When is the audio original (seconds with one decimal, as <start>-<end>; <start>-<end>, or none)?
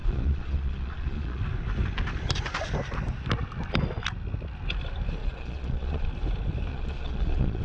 1.4-5.2; 6.1-6.7